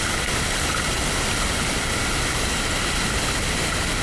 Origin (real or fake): real